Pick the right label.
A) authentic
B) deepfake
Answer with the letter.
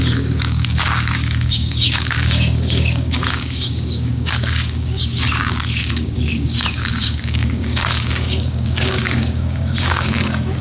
B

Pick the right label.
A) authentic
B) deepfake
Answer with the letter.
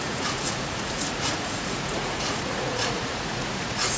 B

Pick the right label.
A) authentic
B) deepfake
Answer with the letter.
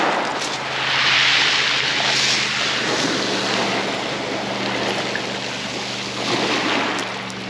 A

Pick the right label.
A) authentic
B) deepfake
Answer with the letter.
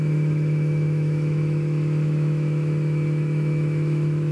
B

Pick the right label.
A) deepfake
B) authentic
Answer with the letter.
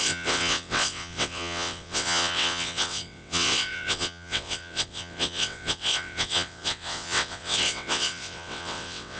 A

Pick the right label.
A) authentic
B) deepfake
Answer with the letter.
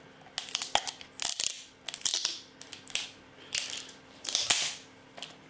A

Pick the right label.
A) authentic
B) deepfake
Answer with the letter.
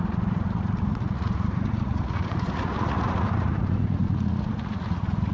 B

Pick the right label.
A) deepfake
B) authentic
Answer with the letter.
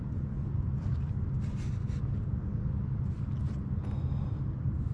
B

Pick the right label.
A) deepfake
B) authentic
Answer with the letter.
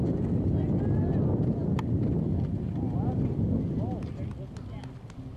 B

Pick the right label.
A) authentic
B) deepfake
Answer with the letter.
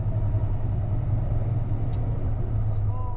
A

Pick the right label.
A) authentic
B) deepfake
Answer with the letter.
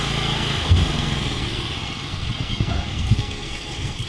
B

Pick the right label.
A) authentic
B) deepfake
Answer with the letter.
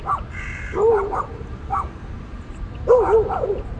B